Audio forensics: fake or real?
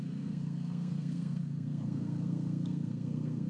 fake